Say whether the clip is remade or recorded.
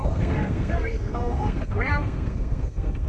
remade